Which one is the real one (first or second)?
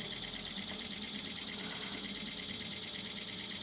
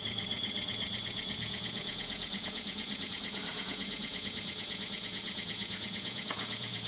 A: first